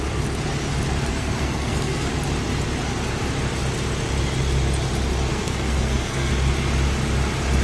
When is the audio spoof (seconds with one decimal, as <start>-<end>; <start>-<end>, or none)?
1.1-2.1; 5.3-6.3